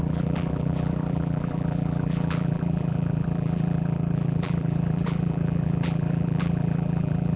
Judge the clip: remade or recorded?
remade